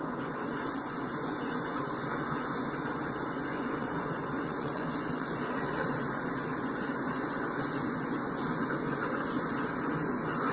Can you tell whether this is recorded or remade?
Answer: remade